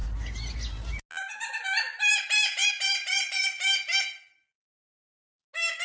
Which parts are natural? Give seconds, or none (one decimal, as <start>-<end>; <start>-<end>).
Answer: 0.0-5.8